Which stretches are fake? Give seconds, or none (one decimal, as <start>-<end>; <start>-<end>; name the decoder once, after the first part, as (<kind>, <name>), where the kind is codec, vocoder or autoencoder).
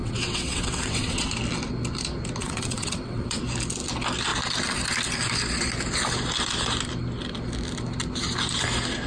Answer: 0.0-1.3 (vocoder, WaveNeXt); 2.4-3.4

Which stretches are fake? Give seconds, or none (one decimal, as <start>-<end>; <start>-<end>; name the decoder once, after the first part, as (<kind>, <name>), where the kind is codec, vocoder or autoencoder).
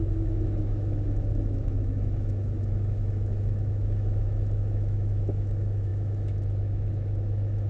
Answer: 0.0-7.7 (autoencoder, DAC-VAE)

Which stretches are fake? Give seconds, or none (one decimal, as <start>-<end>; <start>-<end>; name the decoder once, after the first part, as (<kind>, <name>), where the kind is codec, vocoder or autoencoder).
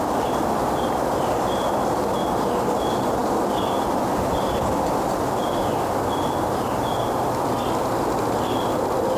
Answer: none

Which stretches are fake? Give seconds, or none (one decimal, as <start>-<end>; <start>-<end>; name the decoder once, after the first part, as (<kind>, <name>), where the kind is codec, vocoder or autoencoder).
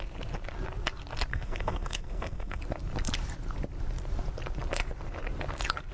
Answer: 1.3-2.6 (codec, SNAC)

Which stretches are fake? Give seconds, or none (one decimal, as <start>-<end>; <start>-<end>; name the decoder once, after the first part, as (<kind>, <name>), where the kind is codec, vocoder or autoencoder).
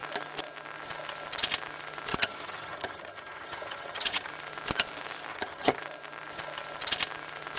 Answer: 2.1-4.3 (vocoder, HiFi-GAN); 5.3-5.8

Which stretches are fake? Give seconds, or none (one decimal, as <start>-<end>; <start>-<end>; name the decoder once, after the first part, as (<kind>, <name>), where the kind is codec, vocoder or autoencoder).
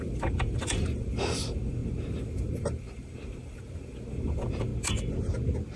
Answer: 0.0-4.7 (vocoder, BigVGAN v2)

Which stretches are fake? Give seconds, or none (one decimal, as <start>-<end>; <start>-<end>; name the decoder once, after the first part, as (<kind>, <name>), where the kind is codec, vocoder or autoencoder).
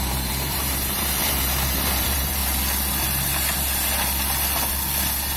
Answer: 0.0-2.4 (vocoder, BigVGAN v2)